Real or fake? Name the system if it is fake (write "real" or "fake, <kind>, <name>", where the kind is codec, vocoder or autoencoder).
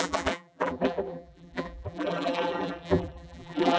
fake, vocoder, BigVGAN v2